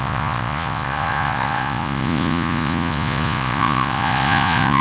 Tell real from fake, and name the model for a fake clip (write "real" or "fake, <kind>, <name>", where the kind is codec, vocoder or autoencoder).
fake, vocoder, Vocos